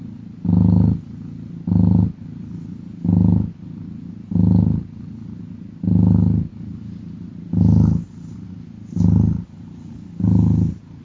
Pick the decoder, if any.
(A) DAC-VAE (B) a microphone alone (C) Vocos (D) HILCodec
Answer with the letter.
B